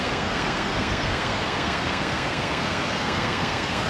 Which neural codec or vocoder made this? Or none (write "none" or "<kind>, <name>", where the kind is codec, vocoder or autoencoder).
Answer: codec, SNAC